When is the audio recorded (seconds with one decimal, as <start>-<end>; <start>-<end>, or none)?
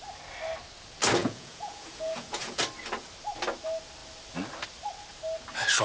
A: 0.0-1.2; 2.6-5.8